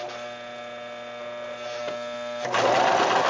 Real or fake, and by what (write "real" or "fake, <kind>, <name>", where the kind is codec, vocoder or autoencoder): real